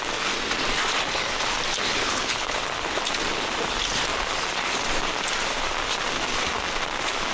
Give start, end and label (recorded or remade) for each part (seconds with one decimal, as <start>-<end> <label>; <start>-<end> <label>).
0.0-2.0 recorded; 2.0-2.6 remade; 2.6-7.3 recorded